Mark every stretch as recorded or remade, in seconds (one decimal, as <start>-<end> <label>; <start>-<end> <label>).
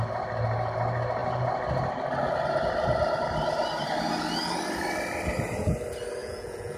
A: 0.0-6.2 recorded; 6.2-6.8 remade